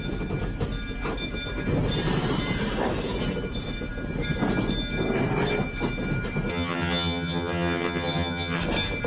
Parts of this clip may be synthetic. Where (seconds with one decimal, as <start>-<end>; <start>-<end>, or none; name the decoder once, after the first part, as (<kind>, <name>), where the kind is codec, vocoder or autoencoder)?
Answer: 6.5-8.6 (vocoder, HiFi-GAN)